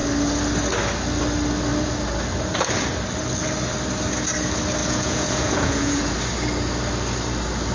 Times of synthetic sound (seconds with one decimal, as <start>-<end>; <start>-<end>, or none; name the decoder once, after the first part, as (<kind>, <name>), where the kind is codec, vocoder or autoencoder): 4.8-6.0 (vocoder, Vocos)